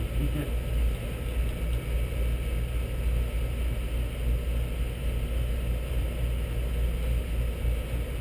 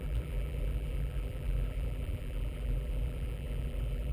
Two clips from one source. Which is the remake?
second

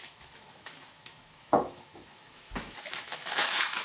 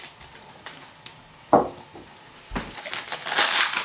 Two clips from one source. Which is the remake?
first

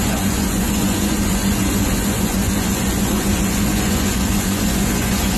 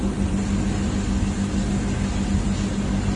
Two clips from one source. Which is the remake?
first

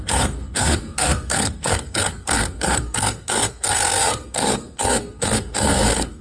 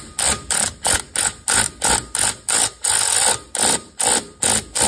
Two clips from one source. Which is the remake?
first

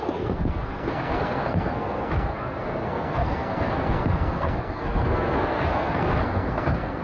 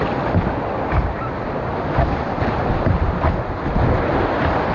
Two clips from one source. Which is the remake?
first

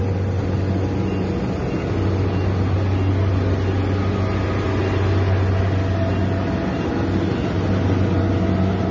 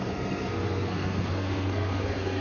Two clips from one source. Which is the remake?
second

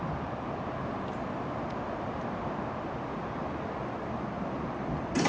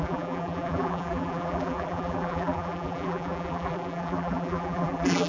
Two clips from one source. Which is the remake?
second